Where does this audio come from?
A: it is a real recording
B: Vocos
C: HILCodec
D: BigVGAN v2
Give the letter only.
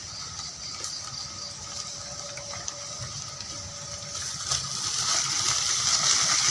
A